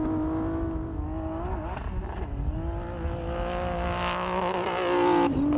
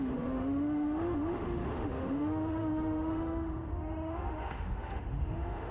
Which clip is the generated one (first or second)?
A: second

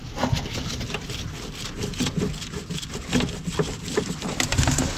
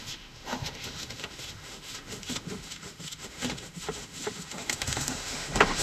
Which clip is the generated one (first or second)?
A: second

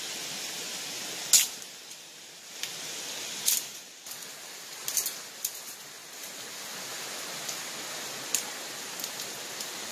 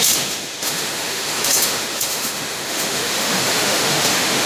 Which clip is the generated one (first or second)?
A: second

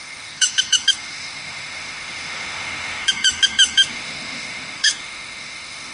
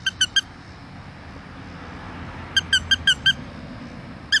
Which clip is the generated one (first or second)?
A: first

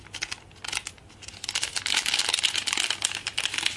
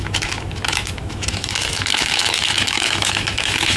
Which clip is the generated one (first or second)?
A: second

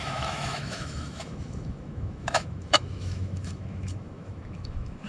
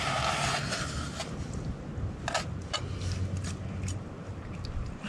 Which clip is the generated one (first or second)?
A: first